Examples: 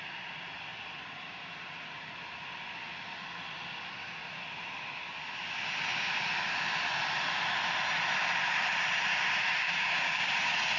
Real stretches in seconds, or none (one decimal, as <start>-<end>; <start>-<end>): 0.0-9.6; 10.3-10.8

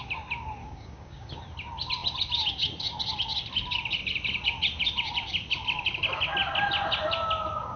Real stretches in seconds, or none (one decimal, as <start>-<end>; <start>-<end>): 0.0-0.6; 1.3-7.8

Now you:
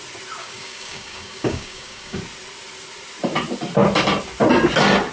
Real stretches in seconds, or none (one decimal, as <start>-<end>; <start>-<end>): 0.0-0.4; 2.2-5.1